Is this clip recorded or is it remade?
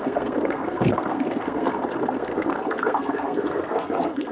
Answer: remade